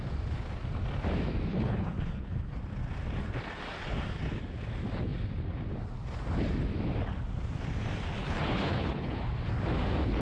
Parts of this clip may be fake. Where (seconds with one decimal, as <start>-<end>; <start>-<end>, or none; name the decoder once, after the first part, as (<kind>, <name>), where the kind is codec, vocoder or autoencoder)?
1.5-2.6 (codec, HILCodec); 8.2-9.2